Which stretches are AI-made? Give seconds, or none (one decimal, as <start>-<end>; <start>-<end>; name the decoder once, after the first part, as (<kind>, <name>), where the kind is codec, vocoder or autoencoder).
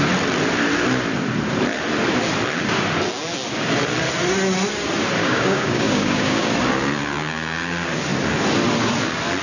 5.2-6.5 (codec, DAC)